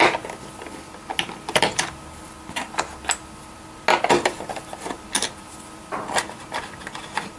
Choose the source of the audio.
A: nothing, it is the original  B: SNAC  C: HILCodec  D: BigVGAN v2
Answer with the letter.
A